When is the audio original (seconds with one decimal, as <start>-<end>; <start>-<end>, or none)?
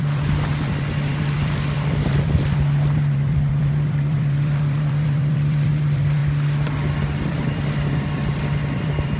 6.2-7.3